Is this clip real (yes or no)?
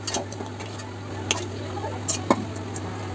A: yes